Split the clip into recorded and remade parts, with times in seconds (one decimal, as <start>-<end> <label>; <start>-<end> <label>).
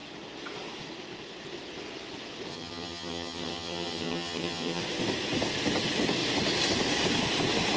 0.0-2.5 recorded; 2.5-4.8 remade; 4.8-7.8 recorded